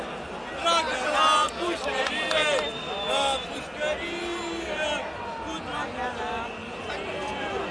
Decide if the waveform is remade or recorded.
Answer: recorded